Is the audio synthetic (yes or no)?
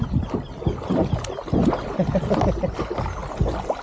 no